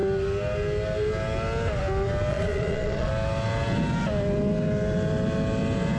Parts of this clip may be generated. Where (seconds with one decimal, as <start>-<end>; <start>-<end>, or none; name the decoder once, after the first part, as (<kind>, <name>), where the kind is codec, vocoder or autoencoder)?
2.3-3.1 (vocoder, Vocos)